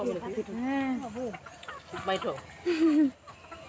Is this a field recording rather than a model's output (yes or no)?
yes